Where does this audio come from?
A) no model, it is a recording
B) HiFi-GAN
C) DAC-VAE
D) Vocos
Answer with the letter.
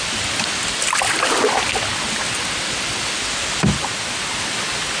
A